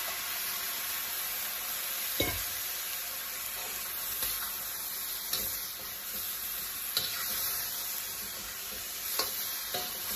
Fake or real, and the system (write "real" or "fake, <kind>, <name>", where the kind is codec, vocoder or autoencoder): real